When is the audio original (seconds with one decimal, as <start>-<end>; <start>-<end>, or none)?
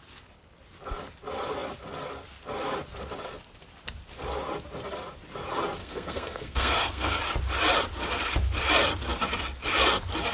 0.0-5.8; 7.2-10.3